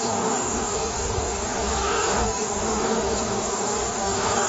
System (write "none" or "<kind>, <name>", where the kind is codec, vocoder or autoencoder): codec, DAC